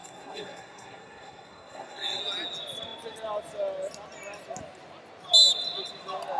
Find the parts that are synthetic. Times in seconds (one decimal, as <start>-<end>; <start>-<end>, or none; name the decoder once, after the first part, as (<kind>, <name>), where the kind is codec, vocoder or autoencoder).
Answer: 0.0-2.2 (codec, SNAC)